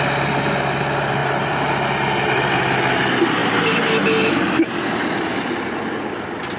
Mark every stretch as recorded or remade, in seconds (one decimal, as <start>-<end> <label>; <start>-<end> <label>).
0.0-1.2 recorded; 1.2-1.7 remade; 1.7-6.6 recorded